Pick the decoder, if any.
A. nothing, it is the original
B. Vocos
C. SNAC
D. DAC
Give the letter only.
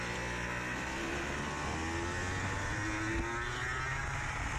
A